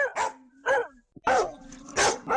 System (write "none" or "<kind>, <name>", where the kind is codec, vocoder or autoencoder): none